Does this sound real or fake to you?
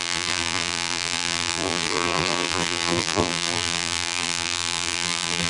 fake